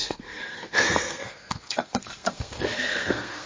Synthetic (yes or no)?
yes